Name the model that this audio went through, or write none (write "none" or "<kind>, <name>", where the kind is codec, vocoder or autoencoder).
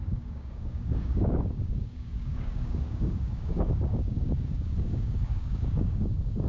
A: codec, DAC